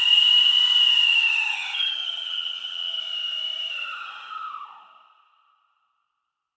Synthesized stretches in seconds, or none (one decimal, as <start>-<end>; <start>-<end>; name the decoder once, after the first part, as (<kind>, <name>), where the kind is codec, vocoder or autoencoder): 1.1-3.0 (vocoder, HiFi-GAN)